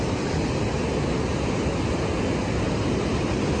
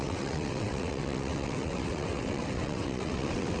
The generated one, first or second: second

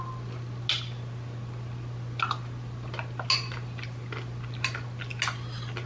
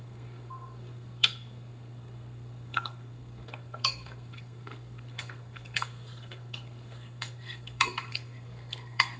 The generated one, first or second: second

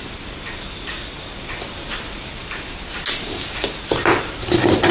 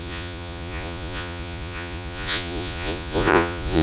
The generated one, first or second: second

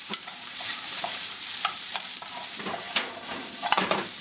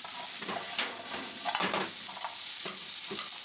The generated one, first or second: first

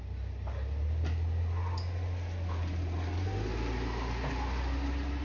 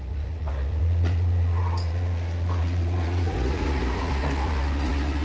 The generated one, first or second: second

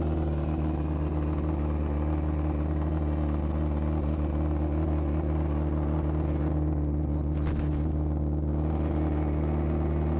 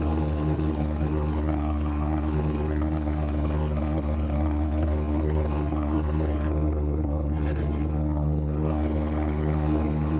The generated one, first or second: second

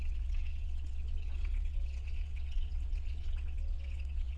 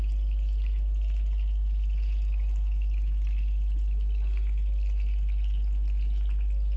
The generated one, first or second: first